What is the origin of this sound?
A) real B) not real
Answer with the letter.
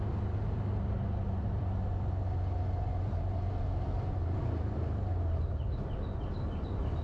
A